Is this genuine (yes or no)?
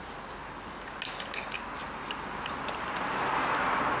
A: yes